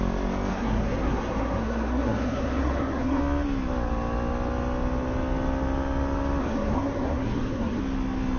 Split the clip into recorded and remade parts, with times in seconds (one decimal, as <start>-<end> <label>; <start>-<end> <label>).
0.0-0.5 recorded; 0.5-3.2 remade; 3.2-6.4 recorded; 6.4-7.8 remade; 7.8-8.4 recorded